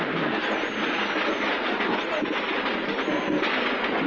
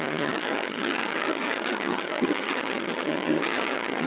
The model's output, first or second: second